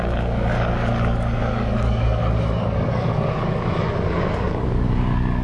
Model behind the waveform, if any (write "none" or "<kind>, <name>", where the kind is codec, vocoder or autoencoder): codec, DAC